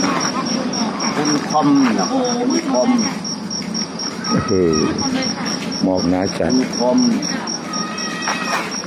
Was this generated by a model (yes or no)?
no